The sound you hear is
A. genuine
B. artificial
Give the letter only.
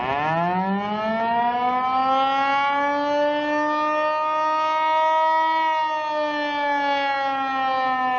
A